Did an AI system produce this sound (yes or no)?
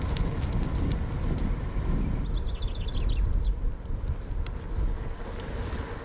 no